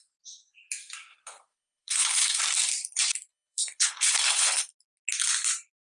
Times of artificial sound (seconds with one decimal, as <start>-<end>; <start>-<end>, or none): 1.1-2.4; 3.3-4.6